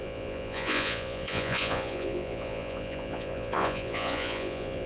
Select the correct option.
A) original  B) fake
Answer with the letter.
B